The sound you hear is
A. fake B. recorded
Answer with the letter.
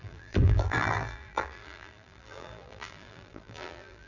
A